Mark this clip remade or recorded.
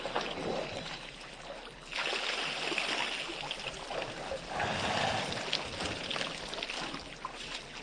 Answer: recorded